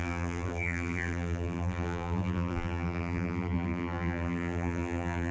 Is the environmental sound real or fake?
fake